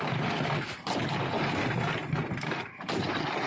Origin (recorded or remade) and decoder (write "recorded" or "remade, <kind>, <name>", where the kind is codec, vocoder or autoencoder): remade, vocoder, BigVGAN v2